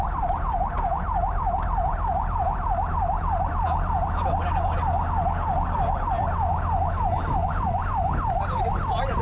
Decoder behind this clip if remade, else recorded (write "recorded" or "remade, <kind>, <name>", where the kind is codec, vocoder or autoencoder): recorded